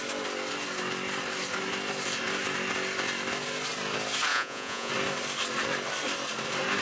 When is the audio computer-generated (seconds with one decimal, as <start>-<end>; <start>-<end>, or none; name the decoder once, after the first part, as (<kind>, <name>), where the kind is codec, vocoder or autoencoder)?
4.3-4.9 (vocoder, Vocos)

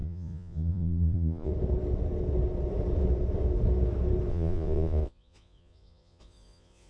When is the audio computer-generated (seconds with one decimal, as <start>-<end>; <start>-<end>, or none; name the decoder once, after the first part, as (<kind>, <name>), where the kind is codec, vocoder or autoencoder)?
0.0-1.5 (vocoder, Vocos); 4.3-6.9

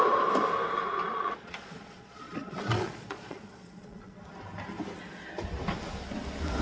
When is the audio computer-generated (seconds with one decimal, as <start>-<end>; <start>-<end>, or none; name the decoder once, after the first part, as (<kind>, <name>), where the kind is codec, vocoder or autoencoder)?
1.1-4.2 (vocoder, Vocos)

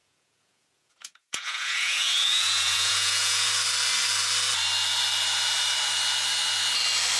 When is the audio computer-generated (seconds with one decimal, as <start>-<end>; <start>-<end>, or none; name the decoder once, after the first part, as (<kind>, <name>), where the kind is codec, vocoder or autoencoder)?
0.0-3.5 (vocoder, Vocos)